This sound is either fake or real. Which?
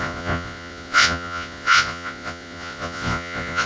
fake